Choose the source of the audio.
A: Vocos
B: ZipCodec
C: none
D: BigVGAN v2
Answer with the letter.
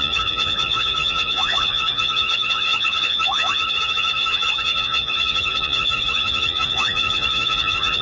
A